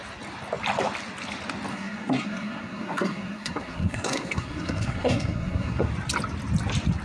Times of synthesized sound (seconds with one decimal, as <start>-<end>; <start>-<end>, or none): 1.7-5.9